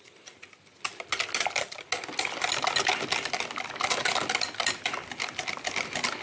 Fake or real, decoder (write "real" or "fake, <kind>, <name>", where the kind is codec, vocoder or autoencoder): real